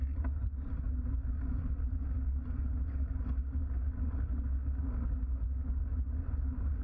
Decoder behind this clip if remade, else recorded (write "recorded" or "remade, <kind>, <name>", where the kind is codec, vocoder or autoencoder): recorded